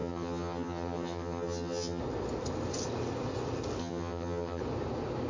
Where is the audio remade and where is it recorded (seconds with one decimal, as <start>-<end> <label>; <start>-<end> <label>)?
0.0-2.0 remade; 2.0-3.8 recorded; 3.8-4.6 remade; 4.6-5.3 recorded